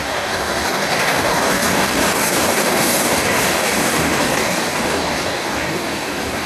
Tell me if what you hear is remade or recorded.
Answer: remade